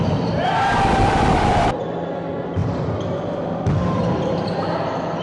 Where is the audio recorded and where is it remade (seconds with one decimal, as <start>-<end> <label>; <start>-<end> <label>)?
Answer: 0.0-5.2 recorded